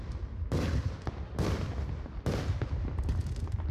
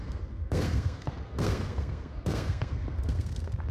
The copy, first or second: second